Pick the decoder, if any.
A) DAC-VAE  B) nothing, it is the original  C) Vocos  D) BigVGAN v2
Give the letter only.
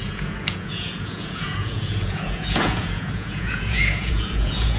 C